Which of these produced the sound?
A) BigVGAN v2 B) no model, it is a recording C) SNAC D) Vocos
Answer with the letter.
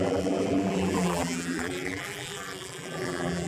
A